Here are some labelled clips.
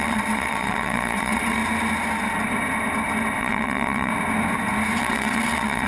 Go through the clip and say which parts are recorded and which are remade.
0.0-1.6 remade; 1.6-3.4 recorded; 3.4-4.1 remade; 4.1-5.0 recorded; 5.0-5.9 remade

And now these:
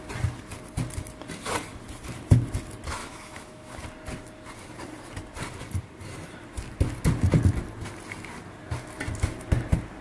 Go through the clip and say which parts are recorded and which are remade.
0.0-3.0 recorded; 3.0-3.8 remade; 3.8-10.0 recorded

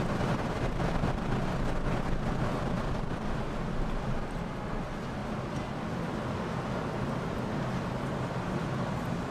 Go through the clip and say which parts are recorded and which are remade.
0.0-5.2 remade; 5.2-6.8 recorded; 6.8-9.3 remade

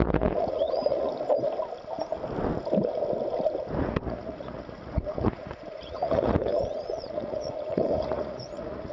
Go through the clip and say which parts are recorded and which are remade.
0.0-1.1 remade; 1.1-3.8 recorded; 3.8-8.9 remade

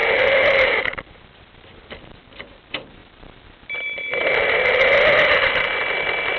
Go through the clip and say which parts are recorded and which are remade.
0.0-1.8 remade; 1.8-6.4 recorded

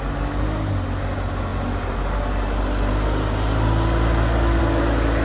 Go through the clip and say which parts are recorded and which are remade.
0.0-5.2 recorded